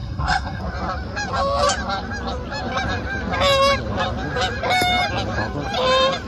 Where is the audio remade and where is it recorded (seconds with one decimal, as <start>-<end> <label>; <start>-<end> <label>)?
0.0-0.6 remade; 0.6-6.3 recorded